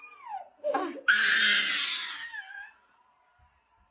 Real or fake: real